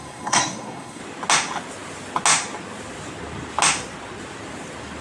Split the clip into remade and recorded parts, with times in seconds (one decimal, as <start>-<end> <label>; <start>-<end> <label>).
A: 0.0-1.0 remade; 1.0-5.0 recorded